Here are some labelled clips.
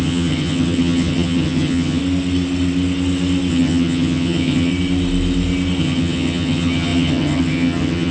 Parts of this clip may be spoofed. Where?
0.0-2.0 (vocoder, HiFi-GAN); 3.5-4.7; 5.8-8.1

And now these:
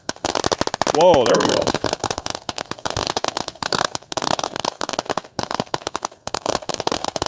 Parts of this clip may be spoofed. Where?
0.0-0.4 (codec, SNAC); 1.3-7.3

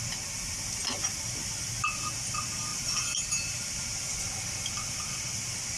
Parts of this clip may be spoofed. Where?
none

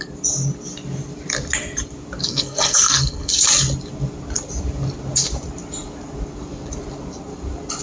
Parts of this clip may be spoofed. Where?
2.3-3.3 (codec, SNAC)

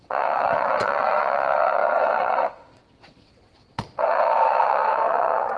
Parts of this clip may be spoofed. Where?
0.0-5.6 (vocoder, WaveNeXt)

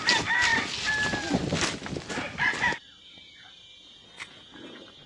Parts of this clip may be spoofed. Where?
none

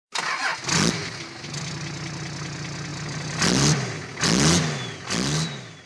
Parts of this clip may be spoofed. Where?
none